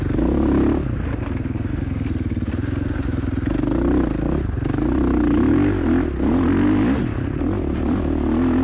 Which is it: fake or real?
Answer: real